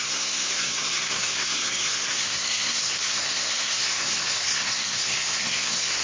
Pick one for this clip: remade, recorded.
remade